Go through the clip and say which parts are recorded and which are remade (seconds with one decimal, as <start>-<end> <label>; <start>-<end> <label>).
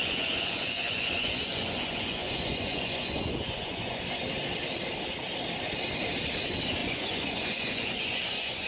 0.0-4.0 remade; 4.0-6.8 recorded; 6.8-8.7 remade